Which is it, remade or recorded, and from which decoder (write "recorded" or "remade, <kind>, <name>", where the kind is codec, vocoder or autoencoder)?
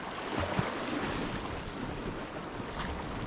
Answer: recorded